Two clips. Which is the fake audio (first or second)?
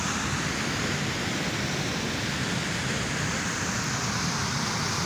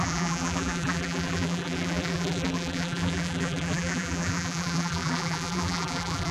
second